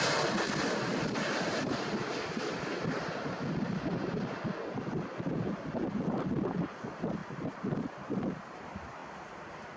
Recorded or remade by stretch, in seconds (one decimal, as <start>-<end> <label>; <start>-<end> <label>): 0.0-9.8 recorded